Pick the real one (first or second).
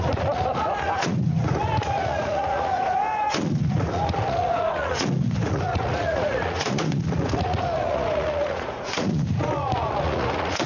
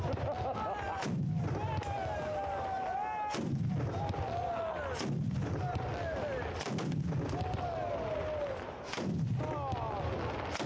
second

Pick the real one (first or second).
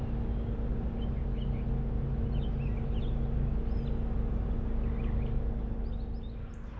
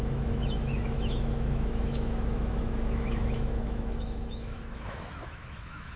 first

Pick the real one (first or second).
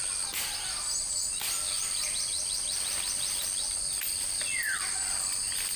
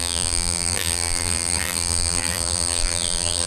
first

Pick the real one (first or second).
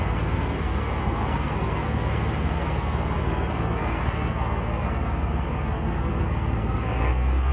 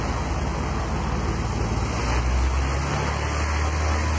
second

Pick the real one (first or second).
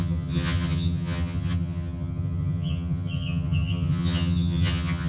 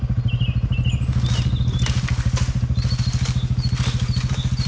second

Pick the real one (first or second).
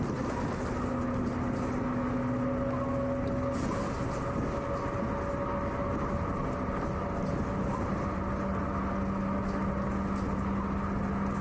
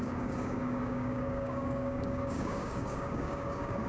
first